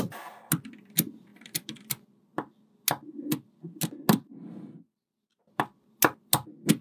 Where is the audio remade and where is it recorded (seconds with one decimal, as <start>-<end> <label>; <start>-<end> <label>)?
0.0-6.8 recorded